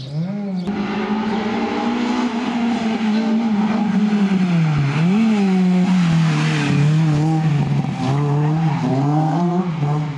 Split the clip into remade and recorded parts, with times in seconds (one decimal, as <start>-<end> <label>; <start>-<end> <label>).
0.0-8.9 recorded; 8.9-9.6 remade; 9.6-10.2 recorded